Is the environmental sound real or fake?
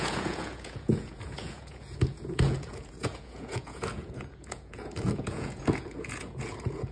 fake